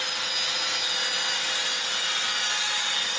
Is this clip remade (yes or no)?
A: no